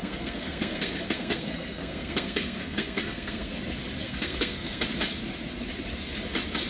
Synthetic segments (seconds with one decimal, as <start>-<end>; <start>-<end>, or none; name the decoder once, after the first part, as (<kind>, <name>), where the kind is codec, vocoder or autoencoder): 0.0-3.6 (codec, SNAC); 4.0-4.8